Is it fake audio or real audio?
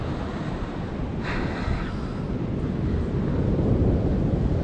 real